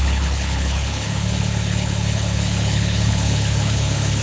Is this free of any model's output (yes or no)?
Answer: no